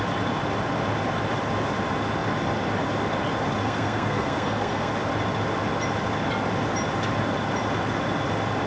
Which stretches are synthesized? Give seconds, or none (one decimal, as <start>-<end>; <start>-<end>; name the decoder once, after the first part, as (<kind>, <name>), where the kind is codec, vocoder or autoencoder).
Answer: 3.6-4.9 (codec, SNAC)